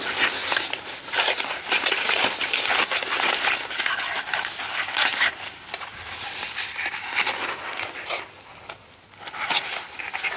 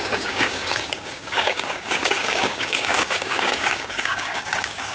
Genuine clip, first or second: first